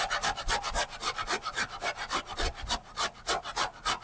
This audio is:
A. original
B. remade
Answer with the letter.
A